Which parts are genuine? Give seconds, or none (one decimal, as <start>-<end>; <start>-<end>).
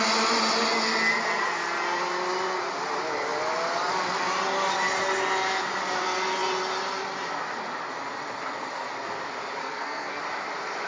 0.0-9.6; 10.2-10.9